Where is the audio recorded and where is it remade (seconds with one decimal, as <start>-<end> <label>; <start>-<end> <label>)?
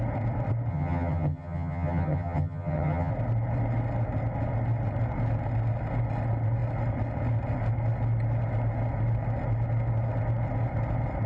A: 0.0-0.7 recorded; 0.7-3.1 remade; 3.1-11.3 recorded